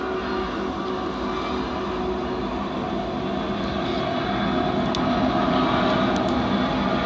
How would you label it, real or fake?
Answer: real